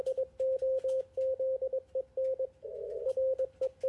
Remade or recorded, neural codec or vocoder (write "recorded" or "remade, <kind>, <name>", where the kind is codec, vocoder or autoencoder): recorded